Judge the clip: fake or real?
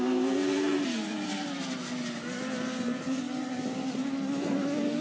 real